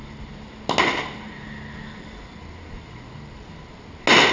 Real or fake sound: real